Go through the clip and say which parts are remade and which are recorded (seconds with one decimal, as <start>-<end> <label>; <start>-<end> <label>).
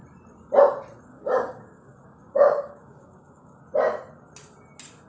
0.0-1.1 recorded; 1.1-3.6 remade; 3.6-5.1 recorded